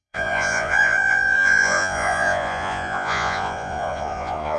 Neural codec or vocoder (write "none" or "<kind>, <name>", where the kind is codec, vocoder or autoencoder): vocoder, Vocos